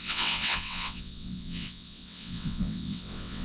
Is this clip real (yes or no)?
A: no